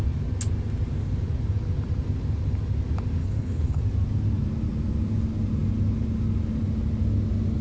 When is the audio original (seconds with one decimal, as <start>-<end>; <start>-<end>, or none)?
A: 0.0-3.2; 3.8-7.6